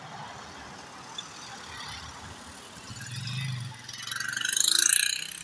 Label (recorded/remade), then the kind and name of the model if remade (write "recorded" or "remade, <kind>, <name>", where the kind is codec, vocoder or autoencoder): recorded